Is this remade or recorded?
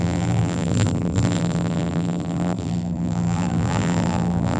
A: remade